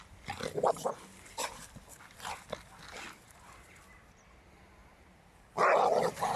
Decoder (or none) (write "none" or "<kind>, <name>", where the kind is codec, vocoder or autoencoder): none